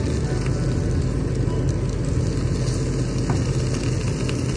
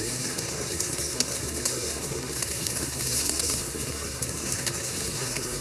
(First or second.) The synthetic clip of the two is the second